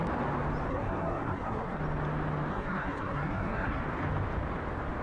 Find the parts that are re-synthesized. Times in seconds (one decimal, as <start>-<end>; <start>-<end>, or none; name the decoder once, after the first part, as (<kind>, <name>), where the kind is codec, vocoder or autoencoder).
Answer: 0.7-1.8 (codec, SNAC); 2.5-3.8